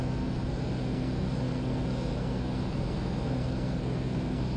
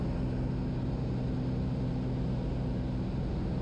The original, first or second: second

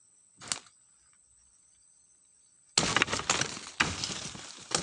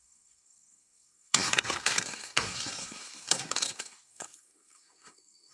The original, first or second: first